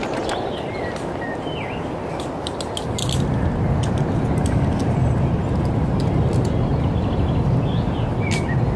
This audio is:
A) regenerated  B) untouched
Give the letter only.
B